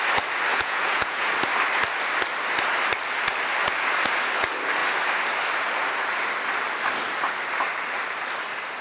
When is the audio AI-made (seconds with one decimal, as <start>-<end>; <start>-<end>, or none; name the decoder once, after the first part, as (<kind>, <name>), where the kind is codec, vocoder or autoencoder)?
0.5-1.3 (vocoder, Vocos)